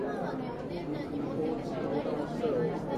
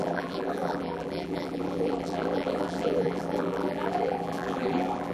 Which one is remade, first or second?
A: second